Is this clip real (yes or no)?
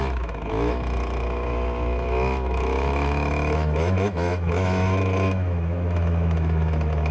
no